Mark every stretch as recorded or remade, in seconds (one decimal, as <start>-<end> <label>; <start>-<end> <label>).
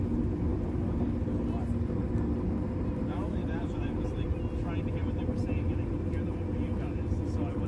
0.0-0.5 recorded; 0.5-1.2 remade; 1.2-3.4 recorded; 3.4-4.4 remade; 4.4-7.7 recorded